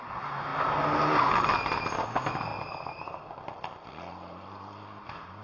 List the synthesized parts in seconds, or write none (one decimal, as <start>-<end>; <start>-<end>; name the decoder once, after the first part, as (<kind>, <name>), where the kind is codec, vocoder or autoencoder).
none